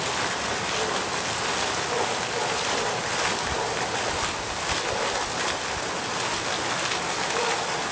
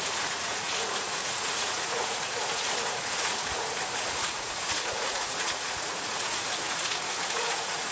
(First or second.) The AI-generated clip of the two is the second